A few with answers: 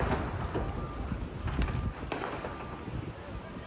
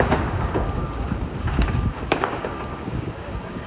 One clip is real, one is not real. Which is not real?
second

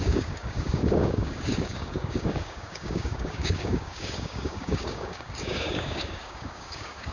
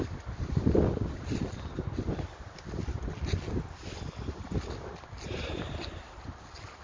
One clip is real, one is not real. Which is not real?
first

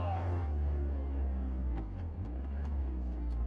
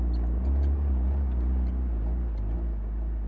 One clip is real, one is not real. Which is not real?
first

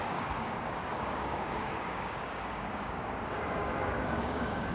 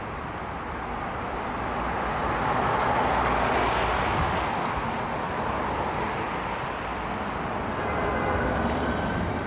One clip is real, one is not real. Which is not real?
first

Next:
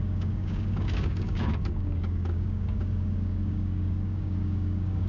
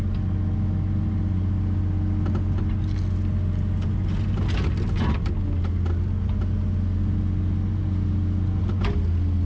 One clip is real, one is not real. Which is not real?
first